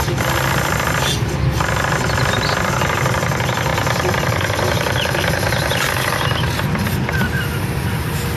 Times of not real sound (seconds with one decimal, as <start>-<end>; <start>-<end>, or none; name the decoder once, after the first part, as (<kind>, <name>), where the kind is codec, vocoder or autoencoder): none